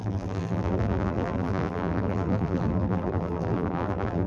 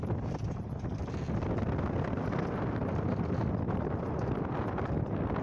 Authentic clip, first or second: second